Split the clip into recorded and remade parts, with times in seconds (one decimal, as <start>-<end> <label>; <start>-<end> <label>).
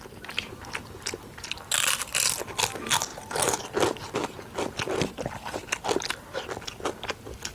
0.0-7.5 recorded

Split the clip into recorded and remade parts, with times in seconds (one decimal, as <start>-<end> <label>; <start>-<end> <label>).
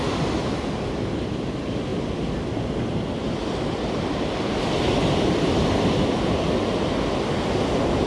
0.0-8.1 recorded